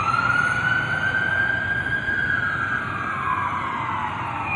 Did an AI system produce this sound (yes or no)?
no